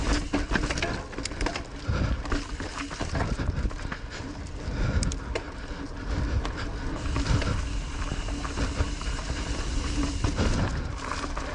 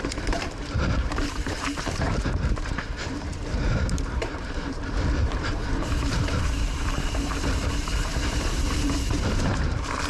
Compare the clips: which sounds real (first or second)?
first